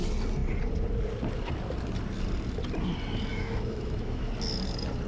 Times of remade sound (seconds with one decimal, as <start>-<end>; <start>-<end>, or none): 3.3-4.3